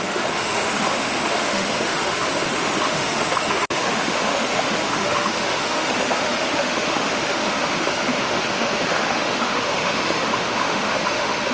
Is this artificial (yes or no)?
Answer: yes